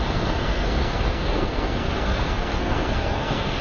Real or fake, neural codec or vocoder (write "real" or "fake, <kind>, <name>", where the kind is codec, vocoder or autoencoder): fake, codec, SNAC